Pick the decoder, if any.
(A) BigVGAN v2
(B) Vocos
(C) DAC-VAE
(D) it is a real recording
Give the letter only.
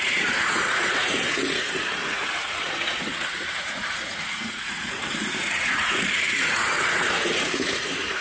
B